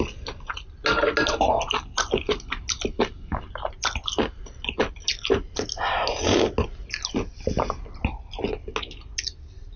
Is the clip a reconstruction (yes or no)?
no